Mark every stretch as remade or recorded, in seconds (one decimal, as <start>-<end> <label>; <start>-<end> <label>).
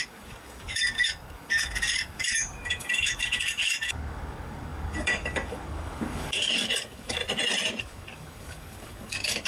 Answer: 0.0-7.2 remade; 7.2-7.8 recorded; 7.8-9.5 remade